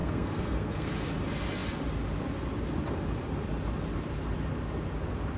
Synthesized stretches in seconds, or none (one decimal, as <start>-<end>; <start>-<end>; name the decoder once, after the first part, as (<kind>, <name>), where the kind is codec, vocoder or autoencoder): 0.0-0.9 (codec, SNAC)